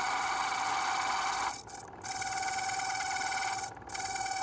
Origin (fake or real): real